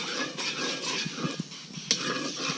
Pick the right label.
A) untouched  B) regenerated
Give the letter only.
A